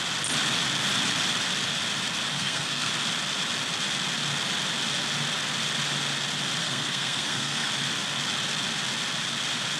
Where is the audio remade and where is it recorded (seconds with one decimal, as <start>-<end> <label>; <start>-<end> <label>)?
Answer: 0.0-2.3 recorded; 2.3-2.9 remade; 2.9-6.6 recorded; 6.6-7.7 remade; 7.7-9.8 recorded